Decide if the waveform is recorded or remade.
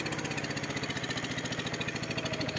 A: recorded